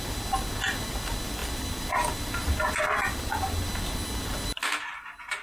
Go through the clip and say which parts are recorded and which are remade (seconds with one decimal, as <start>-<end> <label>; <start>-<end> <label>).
0.0-5.4 recorded